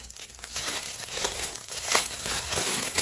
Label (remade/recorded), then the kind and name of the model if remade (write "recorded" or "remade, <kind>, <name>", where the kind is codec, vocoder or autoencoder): remade, codec, SNAC